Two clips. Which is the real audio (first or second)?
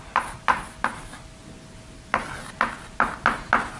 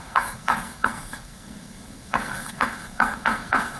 first